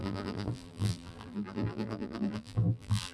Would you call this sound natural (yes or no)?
no